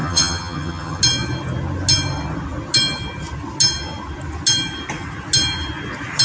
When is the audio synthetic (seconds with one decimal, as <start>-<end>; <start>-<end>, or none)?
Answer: 0.0-1.0